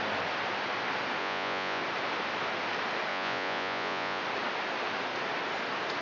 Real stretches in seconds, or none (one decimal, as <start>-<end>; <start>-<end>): 0.0-1.2; 1.8-3.1; 4.2-6.0

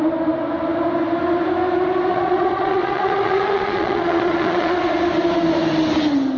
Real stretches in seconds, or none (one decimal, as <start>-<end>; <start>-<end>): 0.0-2.1; 4.8-6.4

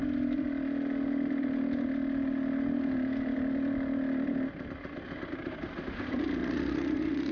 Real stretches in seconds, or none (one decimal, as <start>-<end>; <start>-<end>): 0.0-6.4

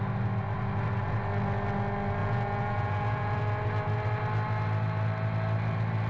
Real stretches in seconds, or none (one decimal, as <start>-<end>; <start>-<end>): 0.0-2.2; 3.4-6.1

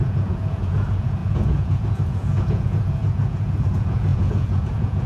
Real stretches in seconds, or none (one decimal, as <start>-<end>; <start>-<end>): none